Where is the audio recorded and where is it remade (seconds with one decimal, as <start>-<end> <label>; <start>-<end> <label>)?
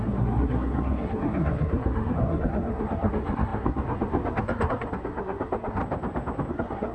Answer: 0.0-5.8 remade; 5.8-6.5 recorded; 6.5-6.9 remade